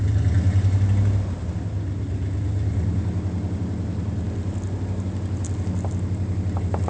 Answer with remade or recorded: recorded